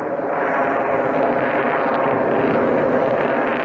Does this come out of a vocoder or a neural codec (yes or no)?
no